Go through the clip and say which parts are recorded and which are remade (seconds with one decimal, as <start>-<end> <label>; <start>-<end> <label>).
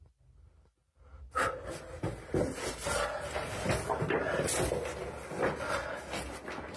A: 0.0-6.8 recorded